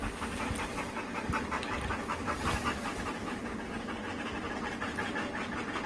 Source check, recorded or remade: recorded